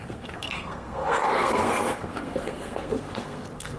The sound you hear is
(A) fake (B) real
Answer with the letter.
A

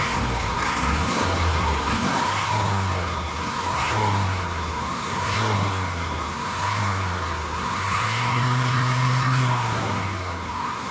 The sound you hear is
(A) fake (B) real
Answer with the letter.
A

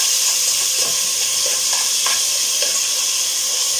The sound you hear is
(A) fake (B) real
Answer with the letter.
A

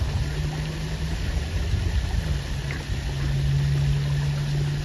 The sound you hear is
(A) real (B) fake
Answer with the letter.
A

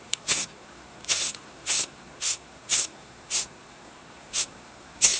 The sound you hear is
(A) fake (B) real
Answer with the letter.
A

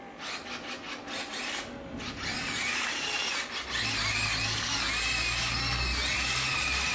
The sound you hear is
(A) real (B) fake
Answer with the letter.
A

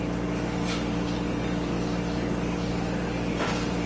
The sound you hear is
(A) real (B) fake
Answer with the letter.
A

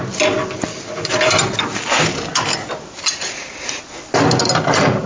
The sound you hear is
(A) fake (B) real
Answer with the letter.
B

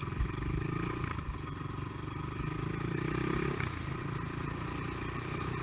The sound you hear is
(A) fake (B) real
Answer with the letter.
B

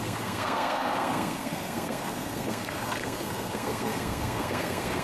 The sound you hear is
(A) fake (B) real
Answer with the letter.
A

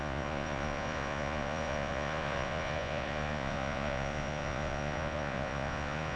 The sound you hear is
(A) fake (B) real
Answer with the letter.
A